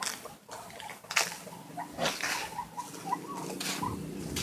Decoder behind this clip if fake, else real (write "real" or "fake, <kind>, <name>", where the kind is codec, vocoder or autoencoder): real